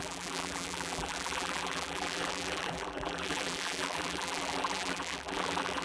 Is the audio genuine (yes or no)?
no